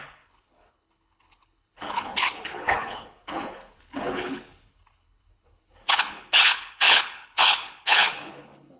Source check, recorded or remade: remade